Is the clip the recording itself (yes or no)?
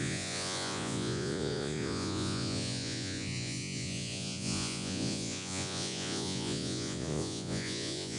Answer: no